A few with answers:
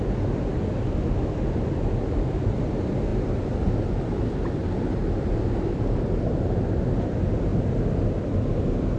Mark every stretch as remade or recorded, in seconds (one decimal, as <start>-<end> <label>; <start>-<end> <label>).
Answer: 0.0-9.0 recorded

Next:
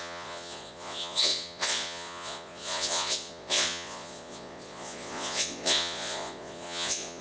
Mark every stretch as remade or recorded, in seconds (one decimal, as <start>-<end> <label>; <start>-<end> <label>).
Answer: 0.0-7.2 remade

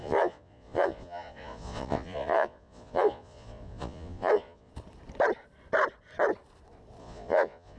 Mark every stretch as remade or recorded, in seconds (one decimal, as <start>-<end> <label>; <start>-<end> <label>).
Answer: 0.0-4.7 remade; 4.7-7.0 recorded; 7.0-7.8 remade